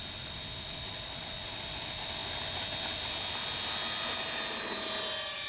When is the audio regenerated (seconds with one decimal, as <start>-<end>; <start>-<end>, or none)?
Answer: none